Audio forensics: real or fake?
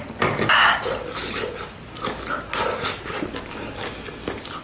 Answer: real